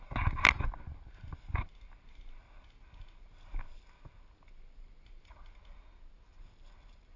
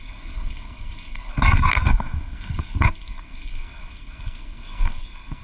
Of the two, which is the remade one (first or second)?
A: second